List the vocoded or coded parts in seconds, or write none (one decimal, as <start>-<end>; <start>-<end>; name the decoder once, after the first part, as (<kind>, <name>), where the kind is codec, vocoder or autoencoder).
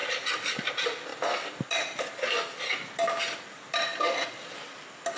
none